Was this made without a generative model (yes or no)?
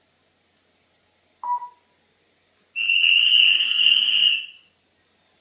yes